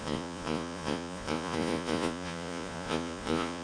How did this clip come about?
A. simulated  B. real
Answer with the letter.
A